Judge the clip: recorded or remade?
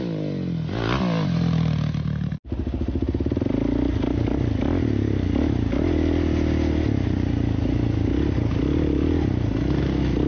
recorded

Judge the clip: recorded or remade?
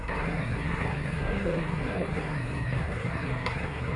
remade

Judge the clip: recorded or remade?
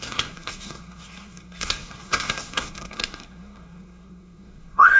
remade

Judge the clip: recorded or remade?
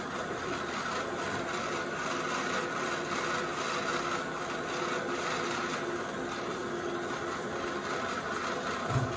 recorded